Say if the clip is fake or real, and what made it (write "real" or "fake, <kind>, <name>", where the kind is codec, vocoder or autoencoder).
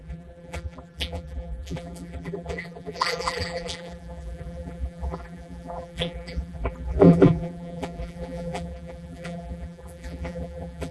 fake, vocoder, BigVGAN v2